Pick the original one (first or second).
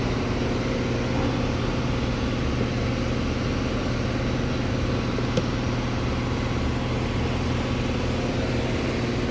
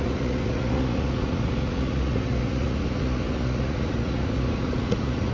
first